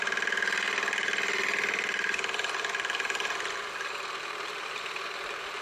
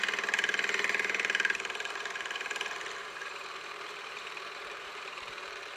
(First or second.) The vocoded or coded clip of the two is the second